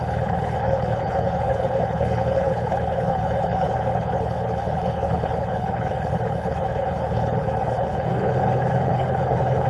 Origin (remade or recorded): remade